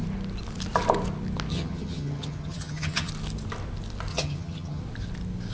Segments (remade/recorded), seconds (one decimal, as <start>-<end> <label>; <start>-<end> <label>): 0.0-1.5 recorded; 1.5-3.1 remade; 3.1-4.1 recorded; 4.1-4.8 remade; 4.8-5.5 recorded